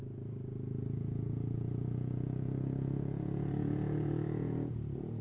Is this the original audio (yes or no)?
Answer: no